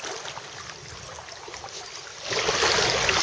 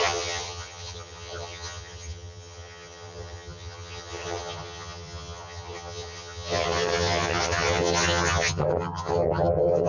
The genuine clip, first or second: first